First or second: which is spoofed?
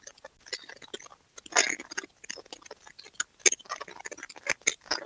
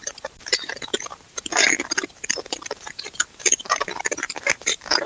second